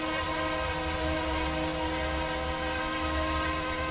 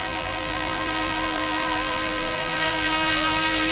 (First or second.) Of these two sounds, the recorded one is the first